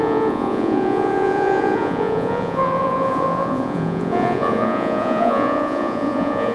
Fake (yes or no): yes